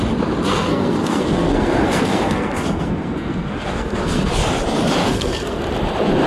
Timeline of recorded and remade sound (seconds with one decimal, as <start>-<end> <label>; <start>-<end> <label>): 0.0-0.5 recorded; 0.5-4.3 remade; 4.3-5.0 recorded; 5.0-5.6 remade; 5.6-6.3 recorded